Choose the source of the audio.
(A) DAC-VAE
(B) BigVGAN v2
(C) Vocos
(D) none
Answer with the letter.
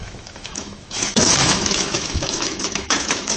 A